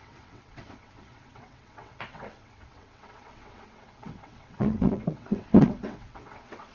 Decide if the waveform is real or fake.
fake